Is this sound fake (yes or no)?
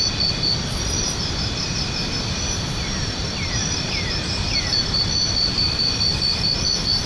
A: no